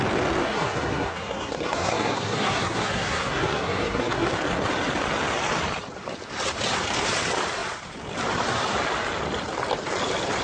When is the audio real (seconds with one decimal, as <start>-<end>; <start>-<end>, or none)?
0.0-0.4; 4.3-10.4